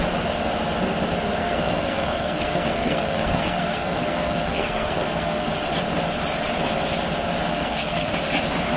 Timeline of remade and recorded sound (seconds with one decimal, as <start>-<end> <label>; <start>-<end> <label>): 0.0-1.4 recorded; 1.4-5.5 remade; 5.5-7.5 recorded; 7.5-8.1 remade; 8.1-8.8 recorded